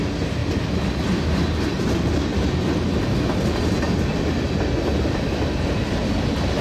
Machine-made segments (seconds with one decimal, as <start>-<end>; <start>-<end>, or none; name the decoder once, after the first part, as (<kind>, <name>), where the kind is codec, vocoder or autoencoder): none